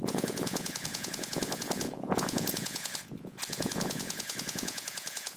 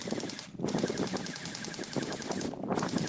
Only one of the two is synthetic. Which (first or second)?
first